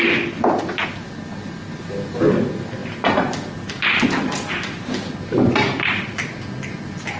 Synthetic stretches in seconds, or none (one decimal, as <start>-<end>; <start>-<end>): none